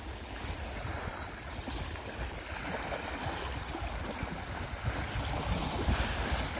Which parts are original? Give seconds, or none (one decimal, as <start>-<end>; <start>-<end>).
0.0-6.6